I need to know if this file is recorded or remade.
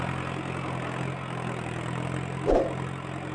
recorded